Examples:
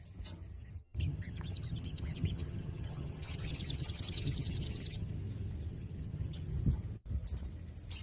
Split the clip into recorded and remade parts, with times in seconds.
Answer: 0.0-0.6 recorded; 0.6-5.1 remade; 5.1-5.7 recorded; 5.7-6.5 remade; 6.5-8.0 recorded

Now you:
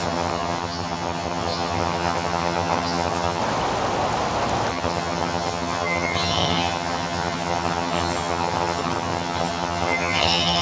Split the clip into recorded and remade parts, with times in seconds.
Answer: 0.0-3.4 remade; 3.4-4.7 recorded; 4.7-10.6 remade

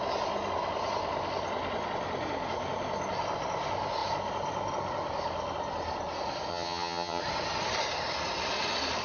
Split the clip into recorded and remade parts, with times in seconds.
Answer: 0.0-6.5 recorded; 6.5-7.2 remade; 7.2-9.0 recorded

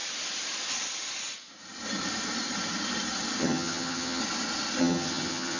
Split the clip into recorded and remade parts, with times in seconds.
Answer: 0.0-3.4 recorded; 3.4-4.2 remade; 4.2-4.8 recorded; 4.8-5.6 remade